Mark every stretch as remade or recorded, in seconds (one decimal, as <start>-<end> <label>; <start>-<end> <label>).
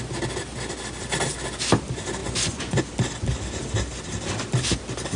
0.0-2.2 recorded; 2.2-2.8 remade; 2.8-5.2 recorded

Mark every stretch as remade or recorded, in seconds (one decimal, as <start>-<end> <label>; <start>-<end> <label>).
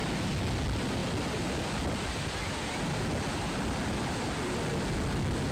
0.0-5.5 recorded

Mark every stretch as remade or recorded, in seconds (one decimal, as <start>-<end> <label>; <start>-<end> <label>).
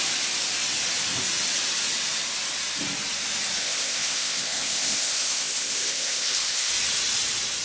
0.0-3.6 recorded; 3.6-6.7 remade; 6.7-7.6 recorded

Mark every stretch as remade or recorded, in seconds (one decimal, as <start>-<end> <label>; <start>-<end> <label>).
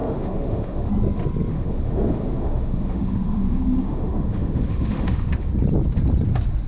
0.0-0.9 remade; 0.9-1.5 recorded; 1.5-5.5 remade; 5.5-6.7 recorded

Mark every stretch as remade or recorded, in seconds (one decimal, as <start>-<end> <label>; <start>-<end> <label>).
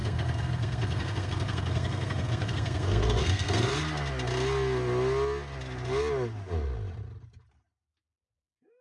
0.0-3.7 remade; 3.7-8.4 recorded; 8.4-8.8 remade